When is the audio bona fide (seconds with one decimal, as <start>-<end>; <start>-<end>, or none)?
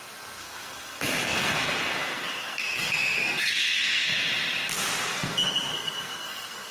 0.0-0.4; 4.3-5.1